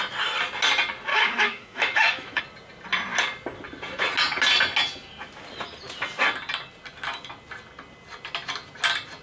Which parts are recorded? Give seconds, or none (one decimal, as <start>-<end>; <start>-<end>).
0.0-1.1; 2.4-9.2